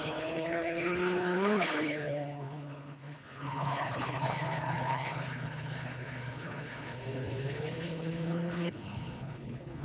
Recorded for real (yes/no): no